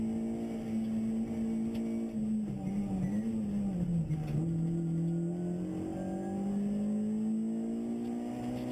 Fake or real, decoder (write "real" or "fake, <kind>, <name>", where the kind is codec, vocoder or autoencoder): real